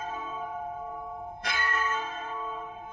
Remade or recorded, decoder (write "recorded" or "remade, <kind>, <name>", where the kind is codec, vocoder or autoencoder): remade, codec, SNAC